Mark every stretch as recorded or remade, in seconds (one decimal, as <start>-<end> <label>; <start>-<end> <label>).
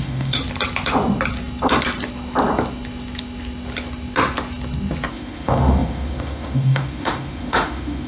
0.0-0.4 remade; 0.4-5.1 recorded; 5.1-8.1 remade